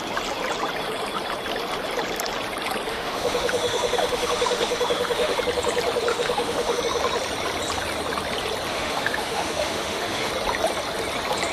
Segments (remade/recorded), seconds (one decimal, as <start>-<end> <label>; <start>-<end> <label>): 0.0-2.9 recorded; 2.9-5.4 remade; 5.4-6.1 recorded; 6.1-6.8 remade; 6.8-8.7 recorded; 8.7-10.3 remade; 10.3-11.5 recorded